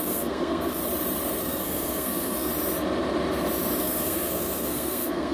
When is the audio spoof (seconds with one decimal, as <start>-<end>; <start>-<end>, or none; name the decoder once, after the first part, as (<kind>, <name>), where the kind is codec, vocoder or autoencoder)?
0.0-0.8 (codec, SNAC); 1.4-2.5; 3.8-5.3